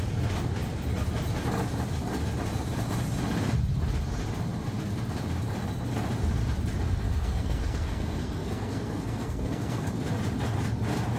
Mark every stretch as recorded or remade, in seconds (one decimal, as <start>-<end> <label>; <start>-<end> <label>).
0.0-7.0 recorded; 7.0-9.9 remade; 9.9-11.2 recorded